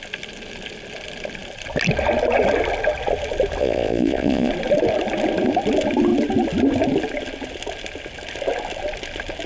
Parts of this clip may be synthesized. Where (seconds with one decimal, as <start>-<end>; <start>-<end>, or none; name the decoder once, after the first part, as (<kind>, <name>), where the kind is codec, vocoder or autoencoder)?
3.6-4.5 (vocoder, Vocos)